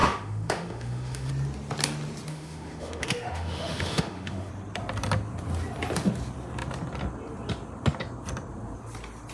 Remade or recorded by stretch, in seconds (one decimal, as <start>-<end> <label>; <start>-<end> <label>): 0.0-1.3 remade; 1.3-2.3 recorded; 2.3-4.5 remade; 4.5-9.3 recorded